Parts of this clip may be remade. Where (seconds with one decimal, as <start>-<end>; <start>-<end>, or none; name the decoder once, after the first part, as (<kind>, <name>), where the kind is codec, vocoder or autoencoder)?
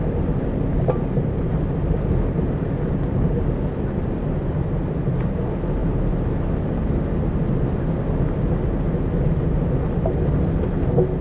none